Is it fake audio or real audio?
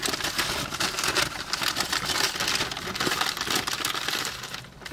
real